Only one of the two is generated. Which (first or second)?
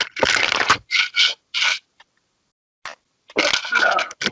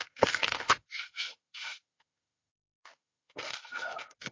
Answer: second